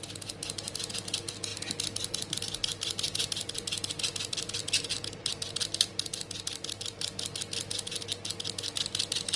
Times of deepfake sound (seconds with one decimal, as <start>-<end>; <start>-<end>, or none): none